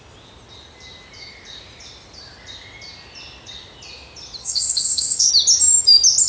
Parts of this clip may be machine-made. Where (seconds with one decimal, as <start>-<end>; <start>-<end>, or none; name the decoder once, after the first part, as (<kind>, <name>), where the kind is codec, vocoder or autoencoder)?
4.4-5.3 (codec, SNAC)